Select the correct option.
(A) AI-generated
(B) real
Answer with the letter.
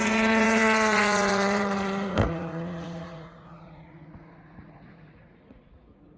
A